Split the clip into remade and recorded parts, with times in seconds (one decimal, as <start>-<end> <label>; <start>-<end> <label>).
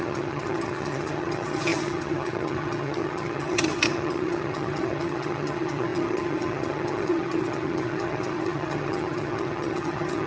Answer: 0.0-10.3 remade